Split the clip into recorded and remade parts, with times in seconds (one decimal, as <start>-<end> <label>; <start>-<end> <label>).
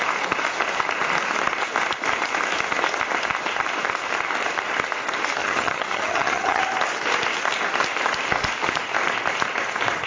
0.0-5.4 recorded; 5.4-6.6 remade; 6.6-10.1 recorded